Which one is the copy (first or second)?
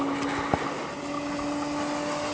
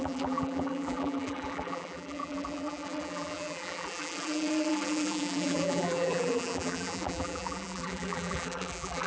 second